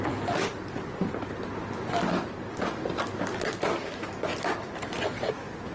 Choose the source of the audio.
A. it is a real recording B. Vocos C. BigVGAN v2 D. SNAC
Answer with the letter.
A